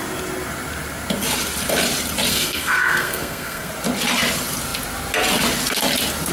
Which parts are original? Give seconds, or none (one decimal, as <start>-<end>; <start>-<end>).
0.0-2.3; 3.7-6.3